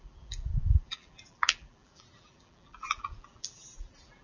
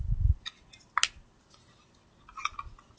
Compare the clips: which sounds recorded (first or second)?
second